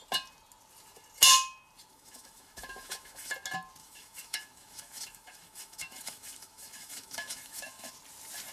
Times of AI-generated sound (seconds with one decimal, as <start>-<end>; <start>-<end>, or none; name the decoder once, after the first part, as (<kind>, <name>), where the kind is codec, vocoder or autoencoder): 1.9-3.3 (autoencoder, DAC-VAE); 3.8-7.9

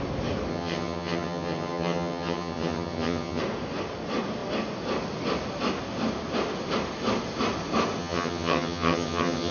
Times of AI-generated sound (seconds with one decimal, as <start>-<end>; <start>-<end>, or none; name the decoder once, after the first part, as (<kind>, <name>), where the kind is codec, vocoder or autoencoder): 0.5-3.4 (vocoder, HiFi-GAN); 8.0-9.5

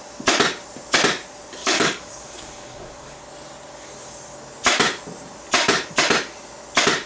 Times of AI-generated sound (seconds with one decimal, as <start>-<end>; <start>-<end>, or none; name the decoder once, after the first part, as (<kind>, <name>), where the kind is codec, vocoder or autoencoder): 1.6-3.2 (codec, DAC)

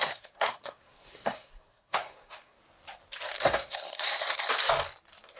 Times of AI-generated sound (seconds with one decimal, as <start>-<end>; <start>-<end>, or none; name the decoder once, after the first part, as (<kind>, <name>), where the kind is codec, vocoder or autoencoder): 0.0-2.6 (codec, SNAC); 3.3-4.5